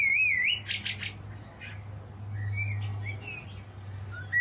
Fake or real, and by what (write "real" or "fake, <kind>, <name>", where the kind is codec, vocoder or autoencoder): real